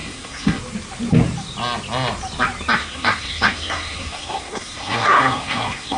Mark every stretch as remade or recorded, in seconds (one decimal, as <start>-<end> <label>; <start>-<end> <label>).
0.0-0.6 remade; 0.6-2.8 recorded; 2.8-6.0 remade